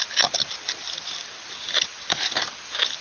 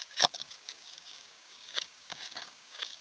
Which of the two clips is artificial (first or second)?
second